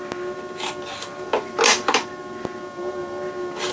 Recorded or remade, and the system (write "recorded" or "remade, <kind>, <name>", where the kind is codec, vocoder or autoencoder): recorded